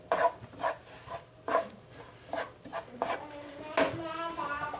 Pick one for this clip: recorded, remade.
recorded